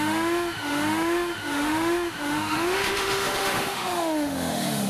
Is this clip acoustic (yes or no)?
no